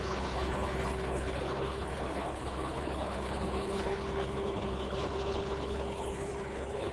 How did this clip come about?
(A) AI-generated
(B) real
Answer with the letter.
A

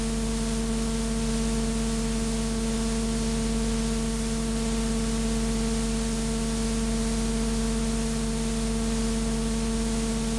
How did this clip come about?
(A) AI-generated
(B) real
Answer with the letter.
B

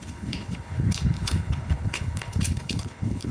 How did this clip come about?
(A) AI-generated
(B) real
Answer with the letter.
A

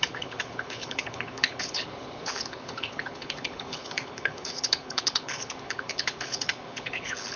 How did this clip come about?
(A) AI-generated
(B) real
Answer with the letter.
A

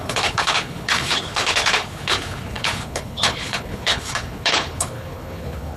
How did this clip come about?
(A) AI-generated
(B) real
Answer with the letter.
A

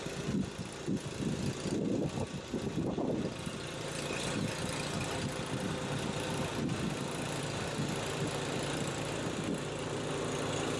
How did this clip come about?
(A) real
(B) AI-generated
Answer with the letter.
A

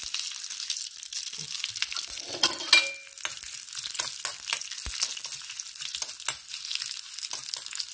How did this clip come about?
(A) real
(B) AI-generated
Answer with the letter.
A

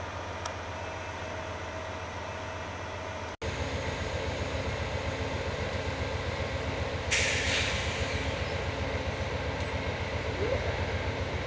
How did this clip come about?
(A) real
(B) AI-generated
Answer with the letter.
A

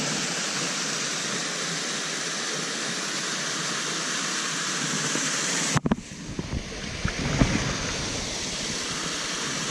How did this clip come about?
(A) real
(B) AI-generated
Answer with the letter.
A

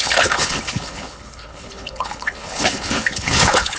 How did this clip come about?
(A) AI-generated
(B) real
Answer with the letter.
A